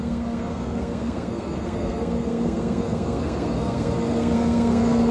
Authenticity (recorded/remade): remade